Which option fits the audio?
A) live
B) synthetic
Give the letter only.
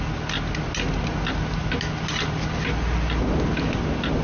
A